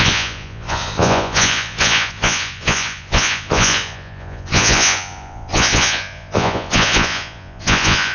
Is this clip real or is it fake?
fake